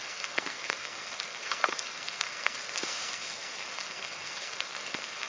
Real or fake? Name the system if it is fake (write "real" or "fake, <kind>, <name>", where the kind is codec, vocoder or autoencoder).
fake, codec, SNAC